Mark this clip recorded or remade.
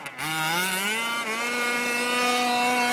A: recorded